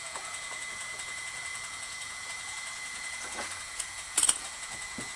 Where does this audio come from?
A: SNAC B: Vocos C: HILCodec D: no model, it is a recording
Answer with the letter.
B